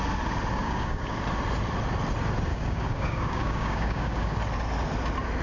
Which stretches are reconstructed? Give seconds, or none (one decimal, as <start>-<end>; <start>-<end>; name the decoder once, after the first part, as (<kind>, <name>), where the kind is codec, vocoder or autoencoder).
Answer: 0.6-1.1 (codec, DAC); 2.5-4.4